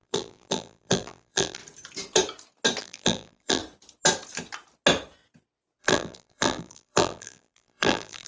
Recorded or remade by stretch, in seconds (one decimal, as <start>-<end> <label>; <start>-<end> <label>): 0.0-1.6 remade; 1.6-2.8 recorded; 2.8-3.6 remade; 3.6-5.8 recorded; 5.8-8.3 remade